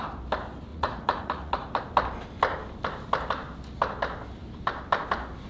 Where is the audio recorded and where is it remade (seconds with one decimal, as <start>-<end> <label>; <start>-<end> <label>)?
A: 0.0-0.7 recorded; 0.7-1.8 remade; 1.8-5.5 recorded